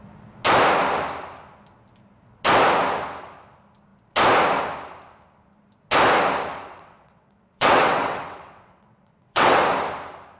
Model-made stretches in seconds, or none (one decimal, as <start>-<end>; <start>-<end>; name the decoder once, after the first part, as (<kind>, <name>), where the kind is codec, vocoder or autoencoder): 6.6-9.6 (vocoder, WaveNeXt)